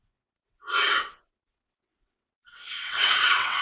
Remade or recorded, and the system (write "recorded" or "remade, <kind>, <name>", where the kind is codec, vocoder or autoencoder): remade, vocoder, WaveNeXt